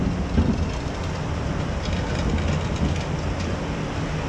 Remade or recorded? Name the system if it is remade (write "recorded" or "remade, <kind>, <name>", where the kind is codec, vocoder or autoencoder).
recorded